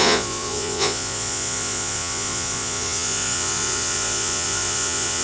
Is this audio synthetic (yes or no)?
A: yes